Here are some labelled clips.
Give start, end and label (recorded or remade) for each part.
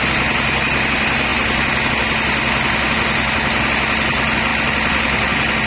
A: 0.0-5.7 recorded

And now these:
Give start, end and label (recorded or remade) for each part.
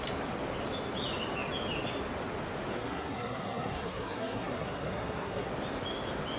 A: 0.0-2.7 recorded; 2.7-5.5 remade; 5.5-6.4 recorded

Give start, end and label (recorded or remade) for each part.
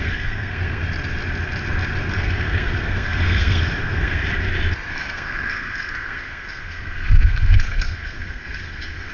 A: 0.0-0.8 remade; 0.8-2.1 recorded; 2.1-4.2 remade; 4.2-4.9 recorded; 4.9-9.1 remade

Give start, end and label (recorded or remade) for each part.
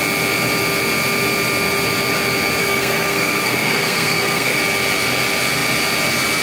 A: 0.0-2.6 recorded; 2.6-4.6 remade; 4.6-6.4 recorded